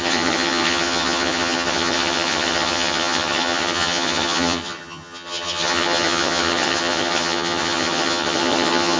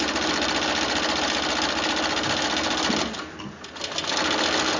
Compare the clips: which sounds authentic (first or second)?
second